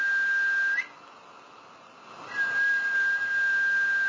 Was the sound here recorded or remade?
recorded